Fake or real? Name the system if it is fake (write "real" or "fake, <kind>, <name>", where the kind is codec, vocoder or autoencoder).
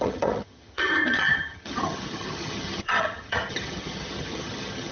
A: fake, vocoder, HiFi-GAN